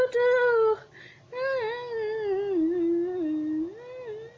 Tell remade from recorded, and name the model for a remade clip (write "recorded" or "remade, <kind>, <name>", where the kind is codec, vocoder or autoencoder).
recorded